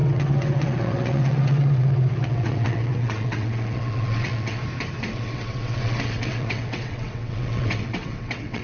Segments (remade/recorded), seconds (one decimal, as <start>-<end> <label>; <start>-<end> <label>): 0.0-4.6 remade; 4.6-5.1 recorded; 5.1-8.6 remade